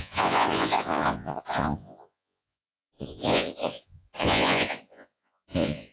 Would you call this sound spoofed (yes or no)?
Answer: yes